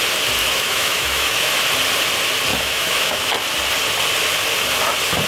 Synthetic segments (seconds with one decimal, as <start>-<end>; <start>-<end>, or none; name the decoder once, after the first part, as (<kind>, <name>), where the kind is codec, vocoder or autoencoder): 0.4-1.6 (autoencoder, DAC-VAE); 2.5-3.3